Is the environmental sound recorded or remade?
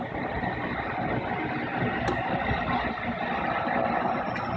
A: recorded